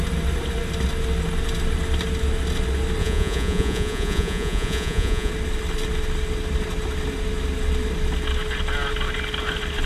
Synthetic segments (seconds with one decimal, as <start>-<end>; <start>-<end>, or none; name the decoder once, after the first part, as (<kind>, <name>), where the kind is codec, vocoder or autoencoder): 3.0-5.3 (vocoder, Vocos)